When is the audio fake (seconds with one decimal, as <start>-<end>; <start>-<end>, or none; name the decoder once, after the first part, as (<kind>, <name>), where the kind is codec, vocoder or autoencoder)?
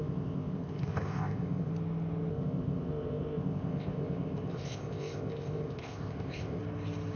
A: 0.0-1.7 (codec, ZipCodec); 2.3-6.6